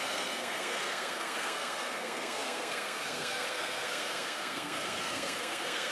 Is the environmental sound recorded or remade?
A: remade